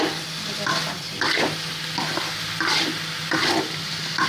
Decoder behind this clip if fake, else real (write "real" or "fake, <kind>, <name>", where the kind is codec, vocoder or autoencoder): real